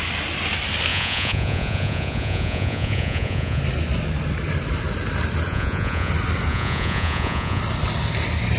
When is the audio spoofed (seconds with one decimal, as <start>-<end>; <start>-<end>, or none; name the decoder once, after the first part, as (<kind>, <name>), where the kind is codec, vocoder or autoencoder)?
0.9-3.6 (vocoder, Vocos); 5.5-6.1; 6.5-7.6